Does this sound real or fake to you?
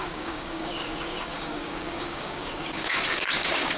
fake